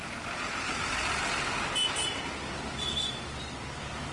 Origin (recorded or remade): recorded